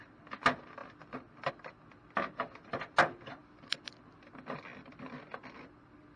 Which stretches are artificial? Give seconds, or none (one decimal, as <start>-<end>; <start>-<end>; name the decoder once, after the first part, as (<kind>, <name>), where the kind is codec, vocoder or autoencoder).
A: none